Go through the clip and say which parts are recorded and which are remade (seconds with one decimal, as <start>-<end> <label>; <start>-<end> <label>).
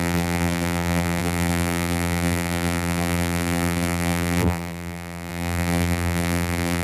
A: 0.0-6.8 remade